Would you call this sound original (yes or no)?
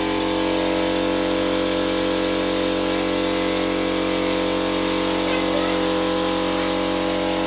yes